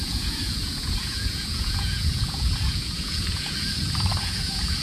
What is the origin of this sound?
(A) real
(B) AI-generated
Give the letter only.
B